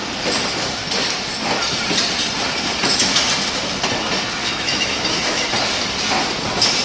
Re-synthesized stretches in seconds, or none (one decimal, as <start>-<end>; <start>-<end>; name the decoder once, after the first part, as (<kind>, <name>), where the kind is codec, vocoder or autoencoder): 4.4-5.5 (autoencoder, DAC-VAE)